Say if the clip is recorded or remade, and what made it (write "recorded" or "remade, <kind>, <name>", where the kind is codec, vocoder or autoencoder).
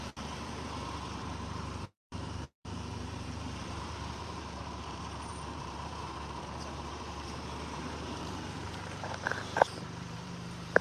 remade, vocoder, BigVGAN v2